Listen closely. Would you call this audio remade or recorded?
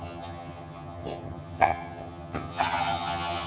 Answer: remade